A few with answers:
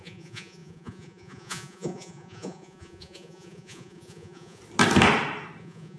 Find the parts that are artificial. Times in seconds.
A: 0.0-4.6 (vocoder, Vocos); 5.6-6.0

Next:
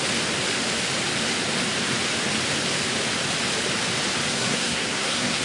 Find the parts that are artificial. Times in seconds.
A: 4.3-5.4 (codec, SNAC)

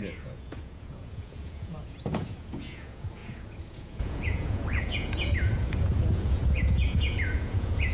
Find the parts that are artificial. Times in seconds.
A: 0.0-7.9 (vocoder, Vocos)

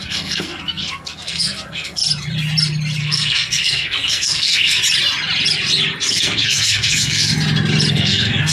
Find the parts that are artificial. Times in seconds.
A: 0.0-2.0 (codec, SNAC); 3.0-4.8; 6.1-7.3; 7.9-8.5

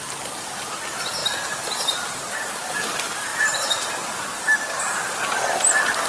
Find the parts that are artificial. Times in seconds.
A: 1.2-2.5 (vocoder, BigVGAN v2); 3.3-5.3

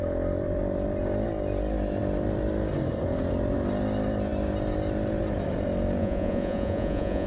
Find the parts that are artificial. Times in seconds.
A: 6.0-7.3 (vocoder, Vocos)

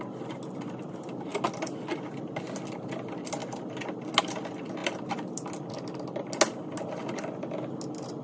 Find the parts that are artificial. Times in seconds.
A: none

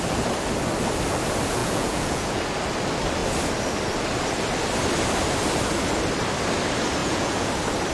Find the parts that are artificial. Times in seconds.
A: 1.6-2.4 (vocoder, Vocos); 7.0-7.5